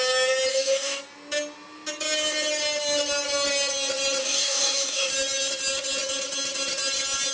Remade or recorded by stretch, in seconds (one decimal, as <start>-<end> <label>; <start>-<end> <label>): 0.0-0.5 recorded; 0.5-1.0 remade; 1.0-4.2 recorded; 4.2-5.1 remade; 5.1-7.3 recorded